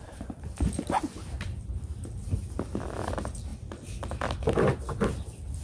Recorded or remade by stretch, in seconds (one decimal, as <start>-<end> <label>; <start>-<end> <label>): 0.0-5.6 recorded